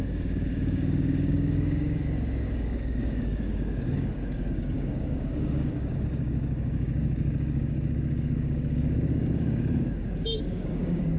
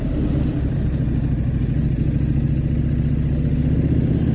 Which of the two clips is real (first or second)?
second